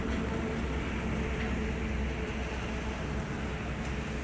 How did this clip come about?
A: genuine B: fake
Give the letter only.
A